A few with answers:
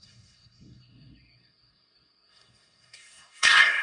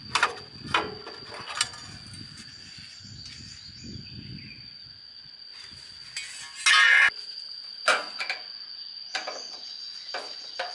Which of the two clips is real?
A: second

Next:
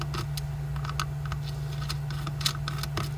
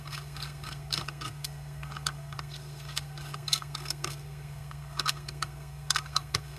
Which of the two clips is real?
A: first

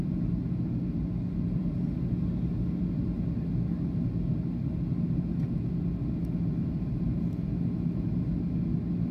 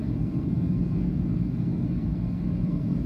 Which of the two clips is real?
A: first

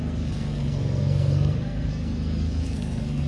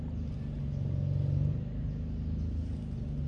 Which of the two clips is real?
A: second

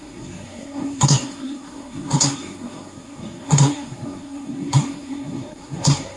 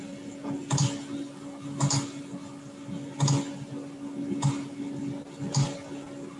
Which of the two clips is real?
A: second